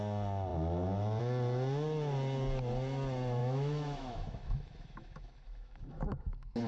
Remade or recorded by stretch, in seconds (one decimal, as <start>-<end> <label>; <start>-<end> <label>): 0.0-3.4 recorded; 3.4-6.7 remade